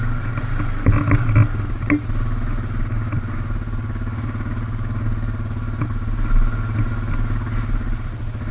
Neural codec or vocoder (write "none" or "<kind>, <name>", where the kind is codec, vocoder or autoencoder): none